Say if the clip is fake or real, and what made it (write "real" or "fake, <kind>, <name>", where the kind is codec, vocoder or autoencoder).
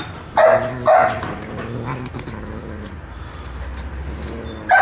real